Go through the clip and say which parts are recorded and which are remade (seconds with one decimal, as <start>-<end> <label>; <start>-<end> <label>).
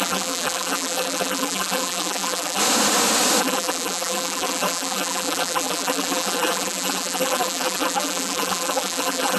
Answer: 0.0-2.6 remade; 2.6-3.4 recorded; 3.4-9.4 remade